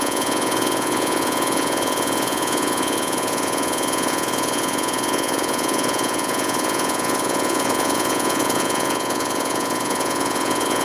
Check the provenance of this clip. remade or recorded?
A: remade